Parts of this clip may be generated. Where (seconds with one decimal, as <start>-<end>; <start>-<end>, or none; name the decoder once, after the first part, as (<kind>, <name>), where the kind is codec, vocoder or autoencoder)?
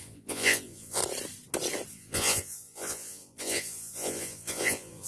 0.0-1.0 (vocoder, Vocos); 1.9-5.1